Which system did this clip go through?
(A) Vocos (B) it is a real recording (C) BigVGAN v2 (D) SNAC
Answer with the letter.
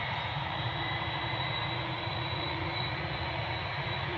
A